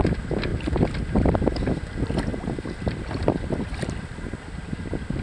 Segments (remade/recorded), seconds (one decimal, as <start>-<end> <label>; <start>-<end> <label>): 0.0-0.5 recorded; 0.5-1.7 remade; 1.7-2.3 recorded; 2.3-3.9 remade; 3.9-5.2 recorded